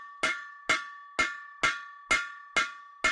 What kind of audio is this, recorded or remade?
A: recorded